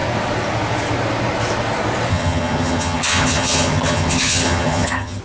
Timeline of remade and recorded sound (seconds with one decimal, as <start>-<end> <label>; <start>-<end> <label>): 0.0-2.1 recorded; 2.1-5.2 remade